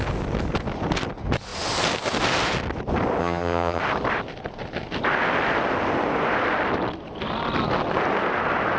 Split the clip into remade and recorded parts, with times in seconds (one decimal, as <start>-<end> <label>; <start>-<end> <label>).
0.0-3.2 recorded; 3.2-3.8 remade; 3.8-8.8 recorded

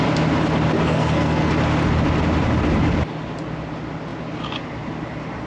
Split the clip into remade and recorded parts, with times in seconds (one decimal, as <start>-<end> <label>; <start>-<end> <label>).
0.0-0.8 recorded; 0.8-1.5 remade; 1.5-5.5 recorded

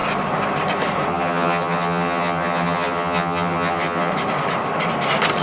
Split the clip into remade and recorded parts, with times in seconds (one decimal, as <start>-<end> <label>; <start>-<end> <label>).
0.0-1.1 recorded; 1.1-4.1 remade; 4.1-5.4 recorded

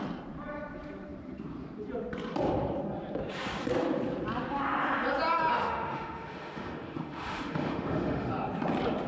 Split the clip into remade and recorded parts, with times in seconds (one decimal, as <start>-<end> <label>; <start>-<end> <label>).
0.0-5.5 recorded; 5.5-8.3 remade; 8.3-9.1 recorded

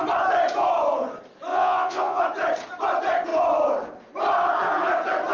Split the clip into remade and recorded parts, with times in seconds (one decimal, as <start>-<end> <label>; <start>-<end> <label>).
0.0-1.5 recorded; 1.5-2.2 remade; 2.2-5.3 recorded

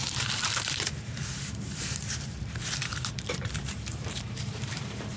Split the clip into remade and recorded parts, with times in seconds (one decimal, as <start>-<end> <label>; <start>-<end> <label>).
0.0-5.2 remade

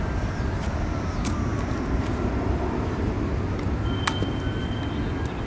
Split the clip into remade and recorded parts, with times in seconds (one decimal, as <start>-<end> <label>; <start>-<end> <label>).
0.0-5.5 recorded

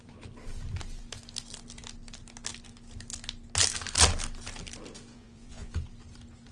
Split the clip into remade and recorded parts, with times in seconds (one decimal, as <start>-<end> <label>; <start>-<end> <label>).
0.0-5.1 recorded; 5.1-5.7 remade; 5.7-6.5 recorded